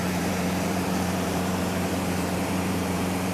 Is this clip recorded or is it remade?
remade